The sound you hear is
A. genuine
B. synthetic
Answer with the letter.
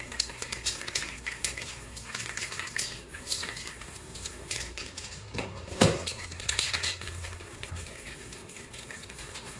B